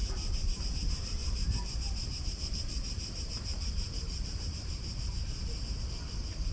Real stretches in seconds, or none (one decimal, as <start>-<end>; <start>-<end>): 0.0-1.2; 5.1-6.5

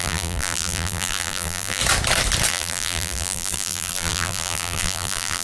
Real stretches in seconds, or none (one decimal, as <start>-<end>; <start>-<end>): 1.8-2.5

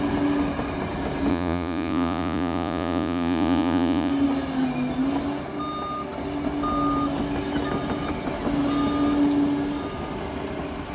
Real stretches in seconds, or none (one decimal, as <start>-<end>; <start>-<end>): 0.0-1.3; 4.1-10.9

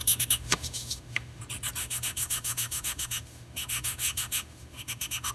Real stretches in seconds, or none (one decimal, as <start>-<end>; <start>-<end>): 1.4-1.8

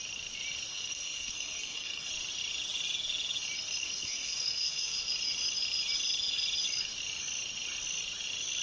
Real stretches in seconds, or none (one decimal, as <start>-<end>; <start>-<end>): 0.0-0.7; 2.1-3.8; 5.1-8.6